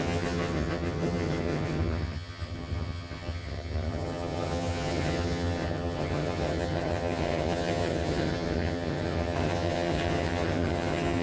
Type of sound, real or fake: fake